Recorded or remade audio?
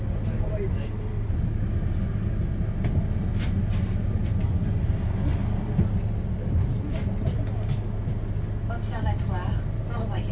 recorded